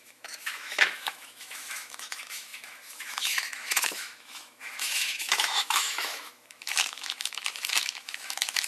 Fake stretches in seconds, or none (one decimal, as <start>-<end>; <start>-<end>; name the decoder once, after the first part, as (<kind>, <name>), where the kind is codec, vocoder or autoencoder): 0.0-8.7 (autoencoder, DAC-VAE)